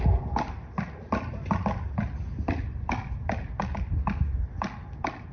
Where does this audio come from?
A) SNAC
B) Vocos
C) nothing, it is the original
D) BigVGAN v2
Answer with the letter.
C